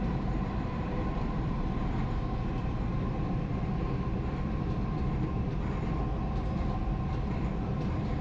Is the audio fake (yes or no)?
yes